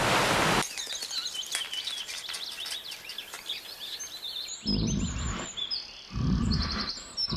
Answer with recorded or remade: recorded